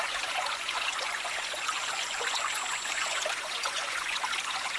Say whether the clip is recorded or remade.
remade